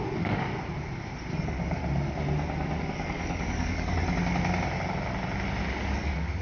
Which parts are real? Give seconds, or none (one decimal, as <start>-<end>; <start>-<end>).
0.5-1.3; 1.8-2.8; 4.0-5.9